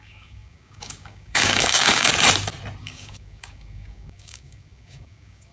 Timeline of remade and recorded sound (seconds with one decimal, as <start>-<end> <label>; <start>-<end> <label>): 0.0-2.1 remade; 2.1-2.8 recorded; 2.8-5.5 remade